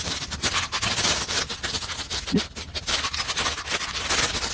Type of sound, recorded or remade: recorded